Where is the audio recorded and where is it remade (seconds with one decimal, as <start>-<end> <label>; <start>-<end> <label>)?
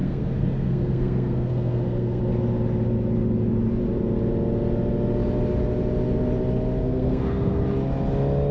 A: 0.0-2.2 remade; 2.2-6.8 recorded; 6.8-7.6 remade; 7.6-8.5 recorded